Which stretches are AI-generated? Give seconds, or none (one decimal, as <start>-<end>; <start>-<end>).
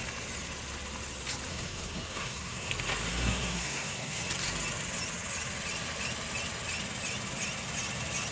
1.5-2.7; 3.1-4.2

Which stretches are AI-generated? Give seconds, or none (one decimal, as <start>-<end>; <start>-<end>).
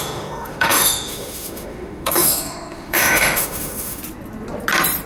0.0-4.0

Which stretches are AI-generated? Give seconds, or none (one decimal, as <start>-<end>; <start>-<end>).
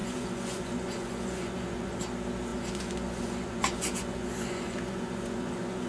0.0-2.0; 2.5-5.9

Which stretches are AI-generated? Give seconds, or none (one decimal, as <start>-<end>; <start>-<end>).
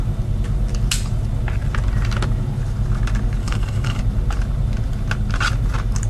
3.4-4.0